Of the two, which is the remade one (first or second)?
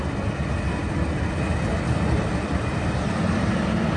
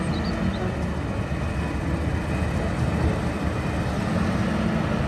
first